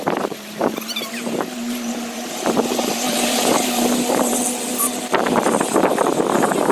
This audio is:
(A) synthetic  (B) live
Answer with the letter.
A